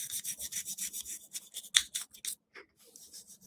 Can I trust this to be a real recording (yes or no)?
yes